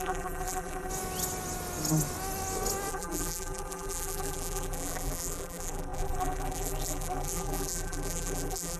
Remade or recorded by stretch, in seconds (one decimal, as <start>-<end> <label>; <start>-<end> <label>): 0.0-0.9 remade; 0.9-2.9 recorded; 2.9-8.8 remade